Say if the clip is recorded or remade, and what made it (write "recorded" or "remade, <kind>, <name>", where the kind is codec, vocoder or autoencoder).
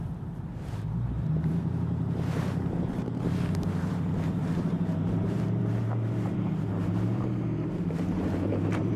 remade, vocoder, BigVGAN v2